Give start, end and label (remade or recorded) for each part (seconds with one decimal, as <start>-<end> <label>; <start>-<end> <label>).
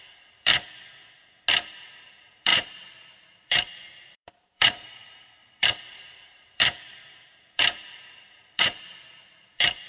0.0-0.5 remade; 0.5-2.1 recorded; 2.1-9.9 remade